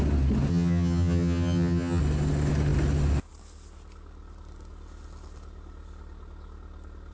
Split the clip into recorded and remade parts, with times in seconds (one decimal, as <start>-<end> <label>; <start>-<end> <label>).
0.0-0.5 recorded; 0.5-2.0 remade; 2.0-7.1 recorded